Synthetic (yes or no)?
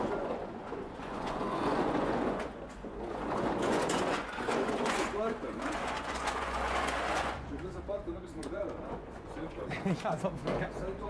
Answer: yes